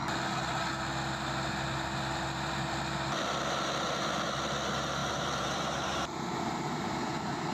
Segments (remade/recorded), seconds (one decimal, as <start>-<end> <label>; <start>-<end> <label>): 0.0-5.0 recorded; 5.0-7.5 remade